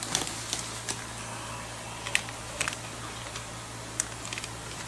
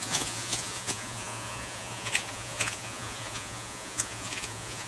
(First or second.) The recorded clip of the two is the first